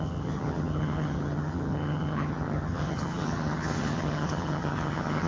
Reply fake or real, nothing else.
fake